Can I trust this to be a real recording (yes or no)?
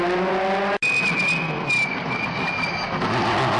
yes